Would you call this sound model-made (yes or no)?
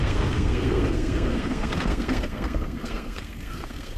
yes